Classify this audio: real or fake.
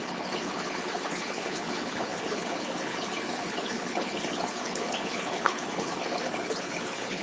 fake